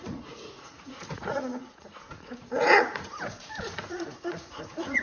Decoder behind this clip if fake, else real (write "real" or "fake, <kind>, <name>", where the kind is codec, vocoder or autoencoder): fake, vocoder, Vocos